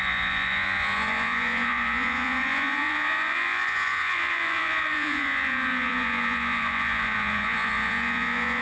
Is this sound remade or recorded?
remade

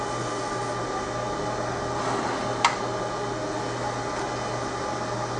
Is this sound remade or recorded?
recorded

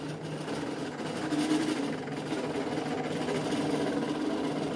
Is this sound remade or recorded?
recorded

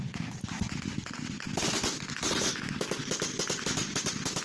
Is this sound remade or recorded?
recorded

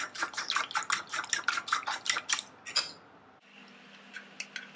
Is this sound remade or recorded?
recorded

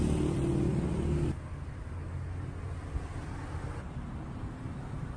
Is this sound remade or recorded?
recorded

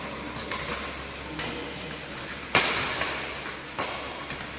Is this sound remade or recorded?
recorded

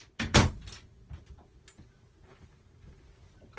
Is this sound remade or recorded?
recorded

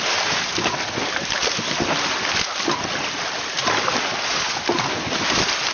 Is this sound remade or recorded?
recorded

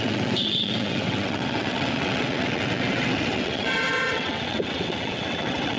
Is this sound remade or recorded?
remade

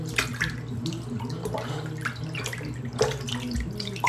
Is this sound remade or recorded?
recorded